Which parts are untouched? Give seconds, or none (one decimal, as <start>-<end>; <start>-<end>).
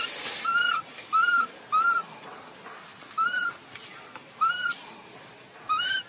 0.0-6.1